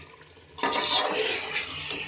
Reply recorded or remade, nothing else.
recorded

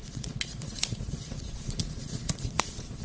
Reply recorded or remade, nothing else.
remade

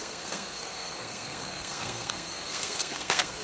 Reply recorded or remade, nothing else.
remade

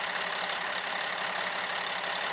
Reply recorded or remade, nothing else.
remade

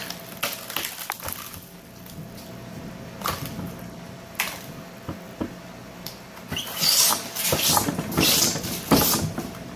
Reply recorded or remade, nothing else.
recorded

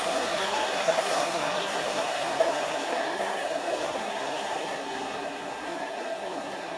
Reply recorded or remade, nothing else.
remade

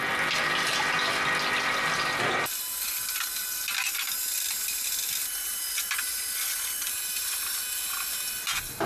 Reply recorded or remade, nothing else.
recorded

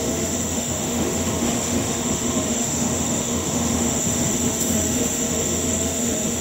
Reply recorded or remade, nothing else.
remade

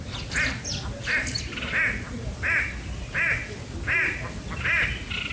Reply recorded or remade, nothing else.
recorded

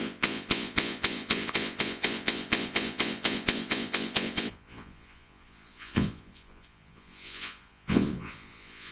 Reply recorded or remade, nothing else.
remade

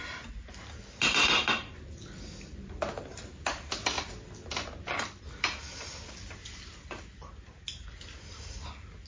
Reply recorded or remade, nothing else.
recorded